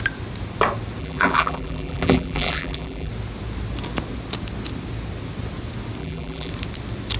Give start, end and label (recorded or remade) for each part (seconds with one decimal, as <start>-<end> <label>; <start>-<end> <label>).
0.0-1.0 recorded; 1.0-3.1 remade; 3.1-6.0 recorded; 6.0-6.5 remade; 6.5-7.2 recorded